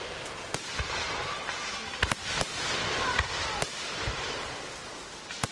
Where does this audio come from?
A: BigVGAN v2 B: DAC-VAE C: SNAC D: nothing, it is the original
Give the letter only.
D